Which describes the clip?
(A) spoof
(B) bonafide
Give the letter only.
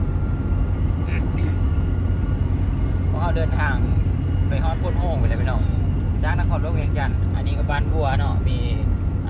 B